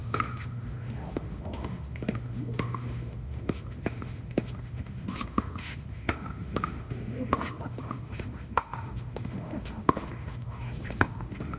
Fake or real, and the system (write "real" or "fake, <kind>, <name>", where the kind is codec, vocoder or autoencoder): fake, autoencoder, DAC-VAE